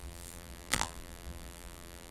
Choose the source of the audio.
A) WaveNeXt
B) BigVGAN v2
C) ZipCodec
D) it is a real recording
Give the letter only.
B